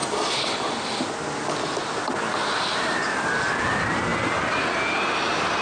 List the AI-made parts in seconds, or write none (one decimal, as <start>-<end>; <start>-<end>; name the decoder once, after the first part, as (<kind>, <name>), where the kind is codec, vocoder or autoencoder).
none